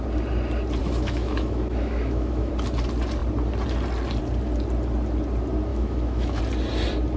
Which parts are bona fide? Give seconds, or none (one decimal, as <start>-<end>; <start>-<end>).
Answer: 0.0-0.8; 2.5-5.7; 6.4-7.2